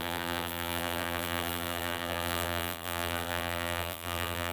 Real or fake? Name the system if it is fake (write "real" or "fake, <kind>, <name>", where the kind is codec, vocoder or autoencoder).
fake, vocoder, BigVGAN v2